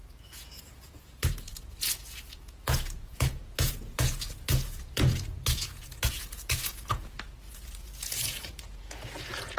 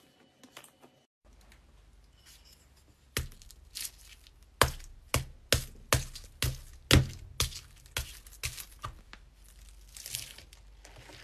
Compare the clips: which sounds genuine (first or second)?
second